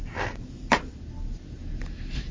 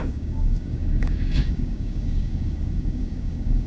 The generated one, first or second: second